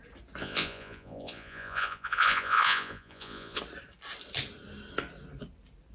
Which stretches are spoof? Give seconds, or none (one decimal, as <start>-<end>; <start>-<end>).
0.4-3.6